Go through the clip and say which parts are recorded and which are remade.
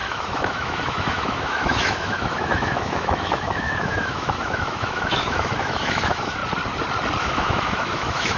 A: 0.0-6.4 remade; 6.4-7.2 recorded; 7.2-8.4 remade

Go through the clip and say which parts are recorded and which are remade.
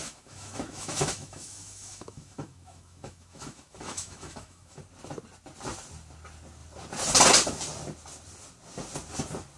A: 0.0-4.8 remade; 4.8-9.6 recorded